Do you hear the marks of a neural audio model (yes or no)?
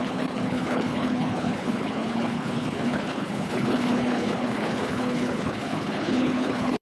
yes